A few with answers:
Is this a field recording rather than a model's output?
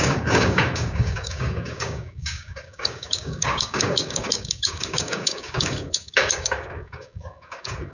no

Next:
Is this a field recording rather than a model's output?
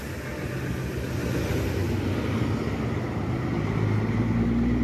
yes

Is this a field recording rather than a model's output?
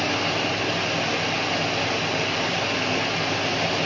yes